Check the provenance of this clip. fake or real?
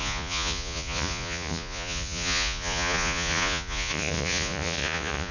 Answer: fake